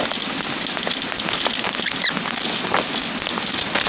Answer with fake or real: real